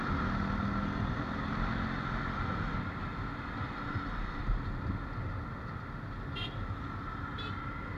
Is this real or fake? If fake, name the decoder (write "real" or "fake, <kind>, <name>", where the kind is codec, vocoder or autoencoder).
real